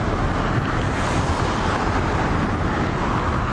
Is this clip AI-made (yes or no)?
no